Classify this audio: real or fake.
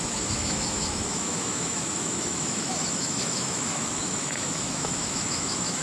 fake